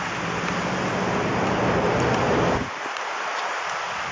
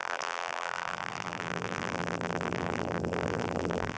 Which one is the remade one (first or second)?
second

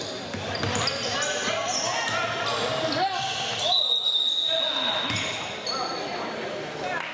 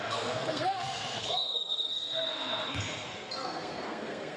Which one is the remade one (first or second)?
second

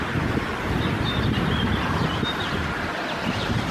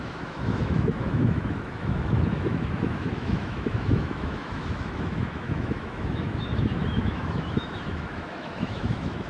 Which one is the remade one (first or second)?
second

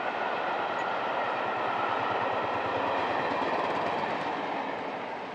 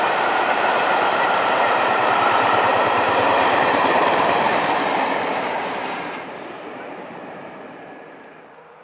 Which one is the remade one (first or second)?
second